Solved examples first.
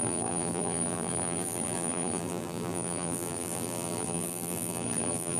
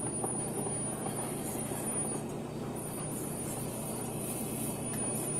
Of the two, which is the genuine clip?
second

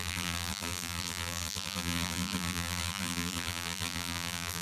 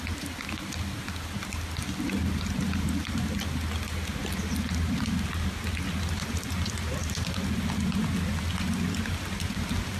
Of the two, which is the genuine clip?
second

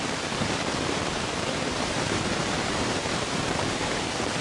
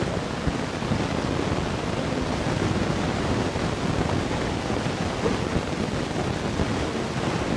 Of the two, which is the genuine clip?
second